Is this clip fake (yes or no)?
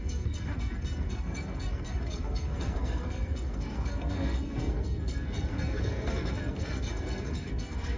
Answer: yes